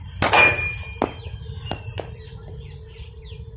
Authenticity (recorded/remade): recorded